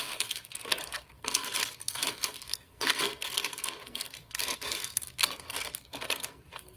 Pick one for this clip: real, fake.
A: fake